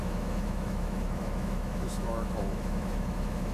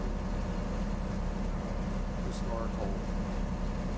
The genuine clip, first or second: second